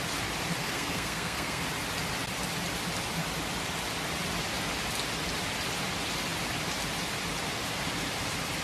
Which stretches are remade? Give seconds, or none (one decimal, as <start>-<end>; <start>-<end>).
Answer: 0.6-1.6